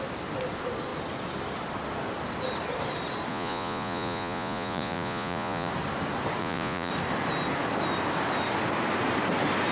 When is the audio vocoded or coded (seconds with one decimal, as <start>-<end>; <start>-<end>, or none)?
3.3-5.7; 6.4-6.9